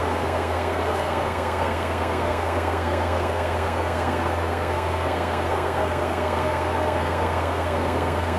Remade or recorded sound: remade